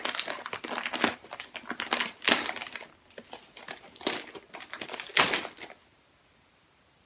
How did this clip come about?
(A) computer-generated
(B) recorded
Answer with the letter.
B